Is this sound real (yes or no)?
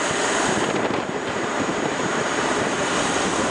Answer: no